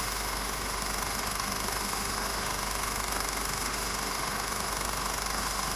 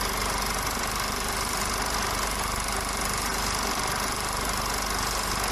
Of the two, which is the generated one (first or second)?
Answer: first